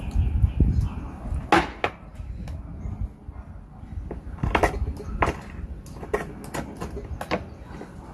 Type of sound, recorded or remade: recorded